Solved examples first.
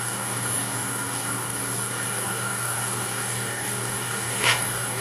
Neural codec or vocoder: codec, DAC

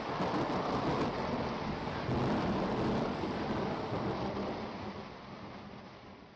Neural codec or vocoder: none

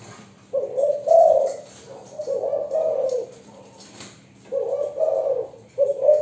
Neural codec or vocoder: none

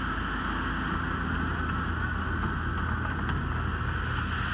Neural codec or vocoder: none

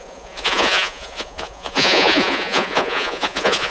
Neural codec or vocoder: vocoder, Vocos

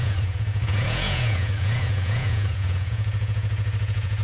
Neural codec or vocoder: vocoder, Vocos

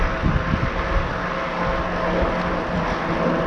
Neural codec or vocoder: none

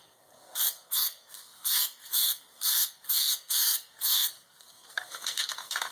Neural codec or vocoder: codec, SNAC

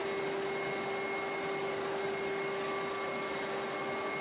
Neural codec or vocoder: none